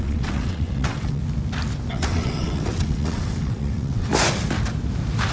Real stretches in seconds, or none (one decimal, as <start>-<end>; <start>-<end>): 1.2-1.9; 4.1-5.3